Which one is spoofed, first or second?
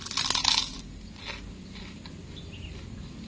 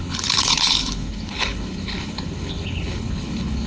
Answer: second